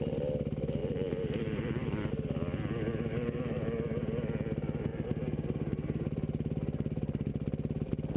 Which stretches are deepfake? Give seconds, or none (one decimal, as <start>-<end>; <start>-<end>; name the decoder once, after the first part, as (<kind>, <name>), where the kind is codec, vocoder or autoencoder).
0.8-2.1 (vocoder, BigVGAN v2); 2.9-4.1; 4.9-7.3

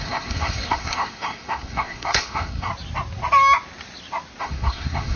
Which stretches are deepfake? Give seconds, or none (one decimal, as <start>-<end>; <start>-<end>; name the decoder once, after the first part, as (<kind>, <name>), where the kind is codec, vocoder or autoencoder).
0.0-2.7 (codec, SNAC); 4.4-5.2

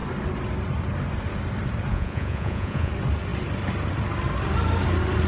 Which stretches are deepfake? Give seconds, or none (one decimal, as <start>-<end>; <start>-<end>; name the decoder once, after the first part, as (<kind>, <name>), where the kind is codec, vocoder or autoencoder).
1.9-2.9 (vocoder, Vocos)